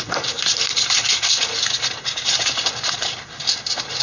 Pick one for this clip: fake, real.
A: fake